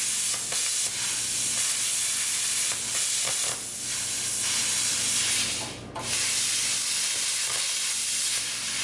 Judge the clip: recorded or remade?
recorded